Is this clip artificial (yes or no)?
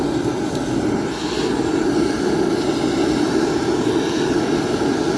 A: no